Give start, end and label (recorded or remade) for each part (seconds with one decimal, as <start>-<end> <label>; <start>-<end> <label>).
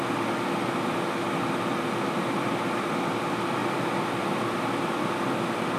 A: 0.0-5.8 recorded